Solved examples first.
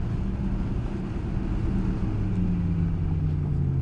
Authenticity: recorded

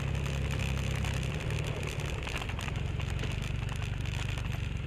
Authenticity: recorded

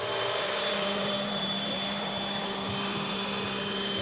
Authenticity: remade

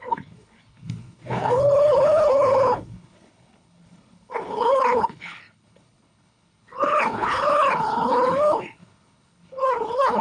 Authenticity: remade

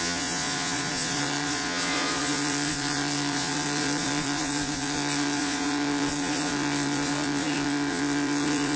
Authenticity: remade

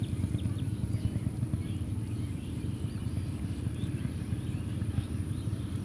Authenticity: remade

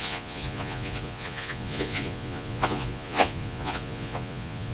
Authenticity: remade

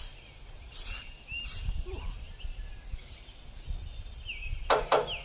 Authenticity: recorded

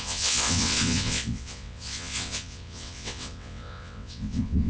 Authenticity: remade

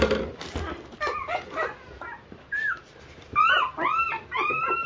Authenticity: recorded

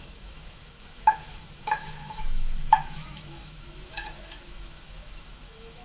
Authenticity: remade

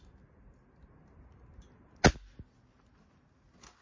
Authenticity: recorded